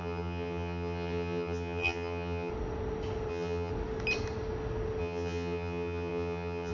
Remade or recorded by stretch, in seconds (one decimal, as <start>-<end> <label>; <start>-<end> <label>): 0.0-2.5 remade; 2.5-3.3 recorded; 3.3-3.7 remade; 3.7-5.0 recorded; 5.0-6.7 remade

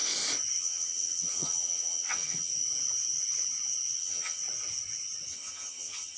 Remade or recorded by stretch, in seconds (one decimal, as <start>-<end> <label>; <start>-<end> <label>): 0.0-0.6 recorded; 0.6-2.5 remade; 2.5-4.0 recorded; 4.0-4.4 remade; 4.4-5.3 recorded; 5.3-6.2 remade

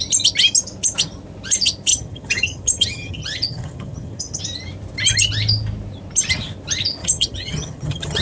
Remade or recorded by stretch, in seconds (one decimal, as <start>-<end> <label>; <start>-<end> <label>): 0.0-1.9 recorded; 1.9-4.4 remade; 4.4-7.0 recorded; 7.0-8.2 remade

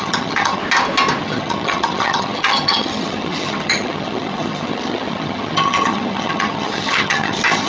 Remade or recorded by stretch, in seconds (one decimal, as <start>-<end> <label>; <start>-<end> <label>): 0.0-0.6 remade; 0.6-1.2 recorded; 1.2-7.7 remade

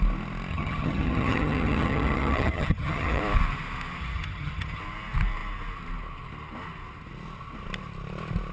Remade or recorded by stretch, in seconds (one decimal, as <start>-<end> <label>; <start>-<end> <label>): 0.0-0.5 recorded; 0.5-3.2 remade; 3.2-4.0 recorded; 4.0-4.8 remade; 4.8-8.5 recorded

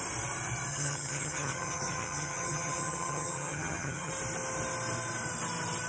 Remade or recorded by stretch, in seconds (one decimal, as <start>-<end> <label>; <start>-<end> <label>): 0.0-0.7 recorded; 0.7-4.1 remade; 4.1-5.9 recorded